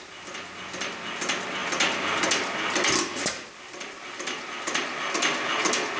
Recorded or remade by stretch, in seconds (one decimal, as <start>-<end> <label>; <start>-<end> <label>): 0.0-6.0 recorded